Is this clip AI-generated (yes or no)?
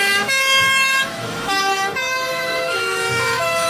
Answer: yes